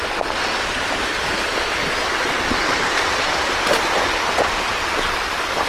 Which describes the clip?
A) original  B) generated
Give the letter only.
A